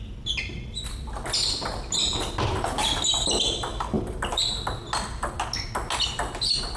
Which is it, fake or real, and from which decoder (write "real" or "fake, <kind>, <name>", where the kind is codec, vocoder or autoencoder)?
real